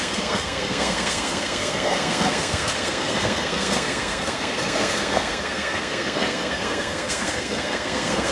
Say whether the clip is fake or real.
fake